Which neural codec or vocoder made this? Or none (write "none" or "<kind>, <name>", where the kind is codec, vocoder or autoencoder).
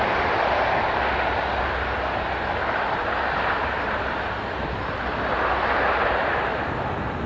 none